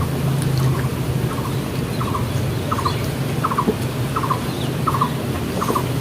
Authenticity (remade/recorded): recorded